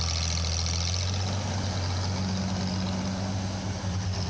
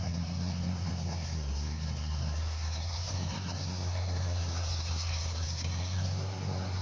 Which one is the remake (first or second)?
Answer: second